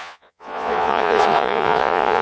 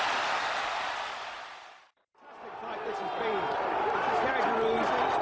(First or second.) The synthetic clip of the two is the first